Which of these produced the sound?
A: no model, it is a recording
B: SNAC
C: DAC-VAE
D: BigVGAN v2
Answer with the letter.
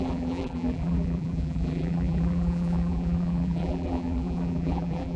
D